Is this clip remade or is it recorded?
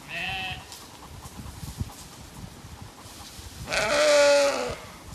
recorded